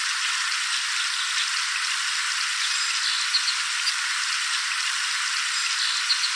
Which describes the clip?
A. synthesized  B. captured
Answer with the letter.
B